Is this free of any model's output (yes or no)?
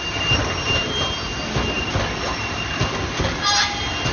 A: yes